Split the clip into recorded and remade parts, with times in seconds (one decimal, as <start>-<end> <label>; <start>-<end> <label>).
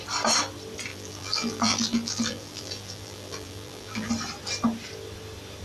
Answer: 0.0-0.9 recorded; 0.9-4.1 remade; 4.1-5.6 recorded